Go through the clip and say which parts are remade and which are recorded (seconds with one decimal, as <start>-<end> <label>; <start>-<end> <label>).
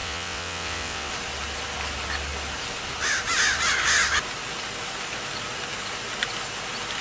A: 0.0-1.1 remade; 1.1-7.0 recorded